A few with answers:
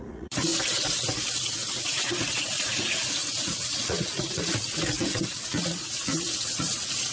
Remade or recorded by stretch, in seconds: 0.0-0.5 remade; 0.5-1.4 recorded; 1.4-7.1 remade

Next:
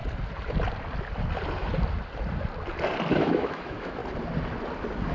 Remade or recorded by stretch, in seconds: 0.0-3.1 recorded; 3.1-4.0 remade; 4.0-5.1 recorded